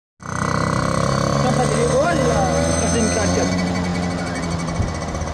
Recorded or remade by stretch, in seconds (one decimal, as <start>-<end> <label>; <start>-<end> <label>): 0.0-1.8 recorded; 1.8-3.0 remade; 3.0-5.3 recorded